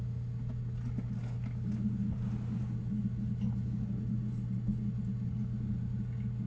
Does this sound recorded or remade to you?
recorded